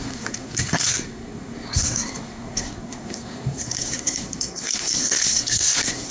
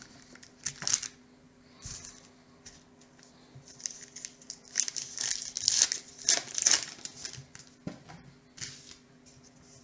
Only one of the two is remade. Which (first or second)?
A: first